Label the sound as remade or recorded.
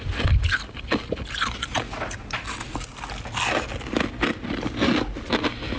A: recorded